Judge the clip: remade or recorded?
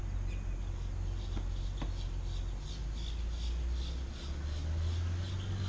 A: recorded